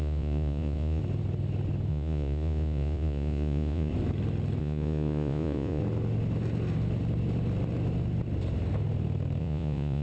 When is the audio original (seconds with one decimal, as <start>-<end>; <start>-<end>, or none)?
1.0-1.9; 3.9-4.6; 5.8-9.4